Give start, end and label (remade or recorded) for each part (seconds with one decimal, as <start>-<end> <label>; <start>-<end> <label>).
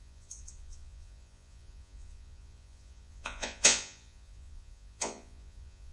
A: 0.0-5.9 remade